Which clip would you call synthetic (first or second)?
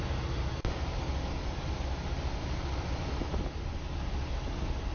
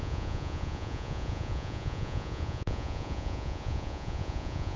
second